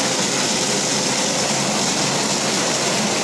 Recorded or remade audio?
recorded